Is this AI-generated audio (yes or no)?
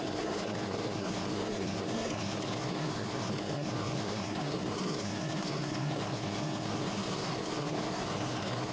yes